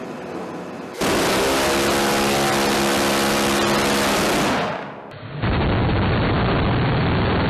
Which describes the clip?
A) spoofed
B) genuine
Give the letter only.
B